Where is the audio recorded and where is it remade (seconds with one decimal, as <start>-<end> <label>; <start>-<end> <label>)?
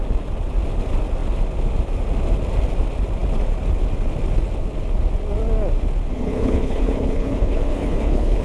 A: 0.0-6.2 recorded; 6.2-8.4 remade